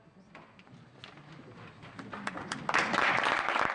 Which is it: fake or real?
real